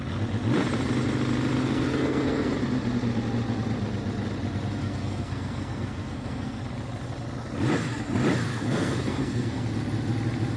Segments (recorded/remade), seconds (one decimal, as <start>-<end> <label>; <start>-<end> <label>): 0.0-1.6 recorded; 1.6-2.5 remade; 2.5-4.8 recorded; 4.8-6.6 remade; 6.6-8.5 recorded; 8.5-9.7 remade; 9.7-10.6 recorded